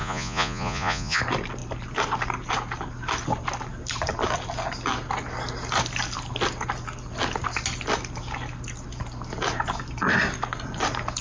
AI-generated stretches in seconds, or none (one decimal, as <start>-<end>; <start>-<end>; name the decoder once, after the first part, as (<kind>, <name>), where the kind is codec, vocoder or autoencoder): 0.0-1.2 (vocoder, Vocos)